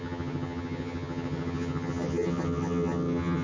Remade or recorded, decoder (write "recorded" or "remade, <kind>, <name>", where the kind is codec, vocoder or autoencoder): remade, vocoder, HiFi-GAN